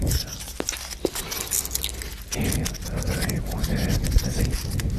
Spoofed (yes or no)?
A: no